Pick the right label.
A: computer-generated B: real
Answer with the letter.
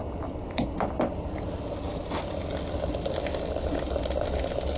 B